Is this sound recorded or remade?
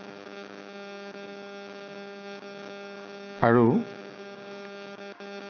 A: remade